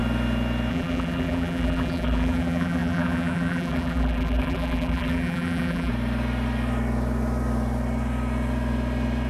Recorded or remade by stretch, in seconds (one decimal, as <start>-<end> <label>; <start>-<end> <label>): 0.0-0.7 recorded; 0.7-5.9 remade; 5.9-9.3 recorded

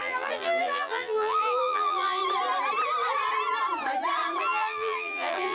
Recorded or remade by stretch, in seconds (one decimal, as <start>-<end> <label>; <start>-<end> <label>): 0.0-2.2 remade; 2.2-4.4 recorded; 4.4-5.5 remade